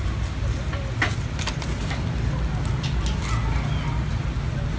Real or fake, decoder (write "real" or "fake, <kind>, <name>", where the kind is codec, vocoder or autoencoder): real